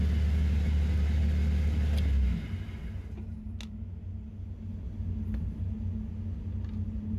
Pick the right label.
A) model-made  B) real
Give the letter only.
B